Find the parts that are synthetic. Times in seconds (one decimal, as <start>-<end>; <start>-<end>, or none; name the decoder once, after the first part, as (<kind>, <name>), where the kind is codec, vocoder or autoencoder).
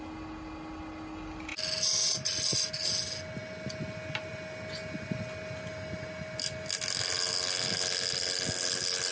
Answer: none